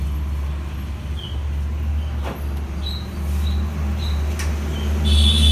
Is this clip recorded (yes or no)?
yes